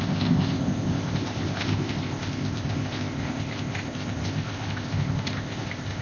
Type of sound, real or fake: fake